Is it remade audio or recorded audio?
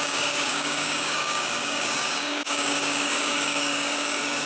remade